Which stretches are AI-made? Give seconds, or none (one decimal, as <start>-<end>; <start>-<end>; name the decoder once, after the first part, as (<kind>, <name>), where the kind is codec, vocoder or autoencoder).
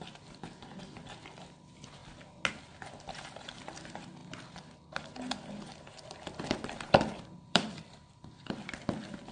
4.2-8.6 (vocoder, BigVGAN v2)